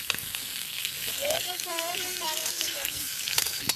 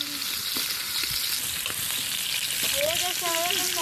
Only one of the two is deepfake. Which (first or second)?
first